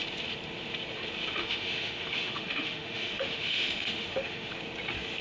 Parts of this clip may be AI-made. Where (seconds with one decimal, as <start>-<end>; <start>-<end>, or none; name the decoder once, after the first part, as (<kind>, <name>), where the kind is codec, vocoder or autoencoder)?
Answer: 1.4-4.5 (autoencoder, DAC-VAE)